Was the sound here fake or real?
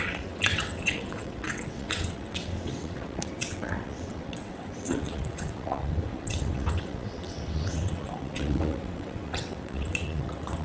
fake